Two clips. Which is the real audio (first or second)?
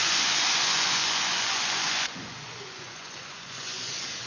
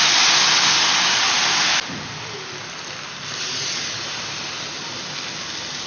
second